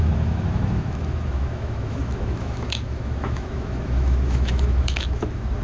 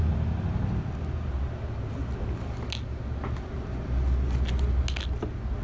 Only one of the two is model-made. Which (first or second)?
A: first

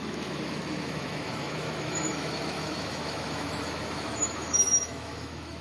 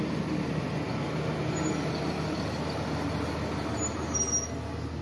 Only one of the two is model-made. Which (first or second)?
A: first